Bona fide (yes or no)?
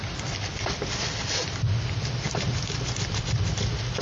yes